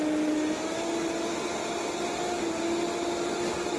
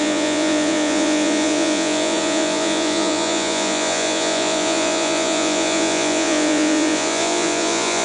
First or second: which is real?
first